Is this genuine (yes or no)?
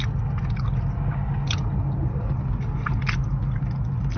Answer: yes